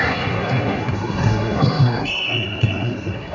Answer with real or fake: fake